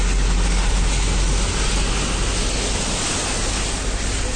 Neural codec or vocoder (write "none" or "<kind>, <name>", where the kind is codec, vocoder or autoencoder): none